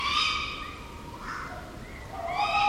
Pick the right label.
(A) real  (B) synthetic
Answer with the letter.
A